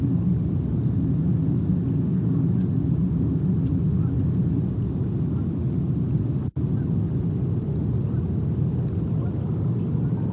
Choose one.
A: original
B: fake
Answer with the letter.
A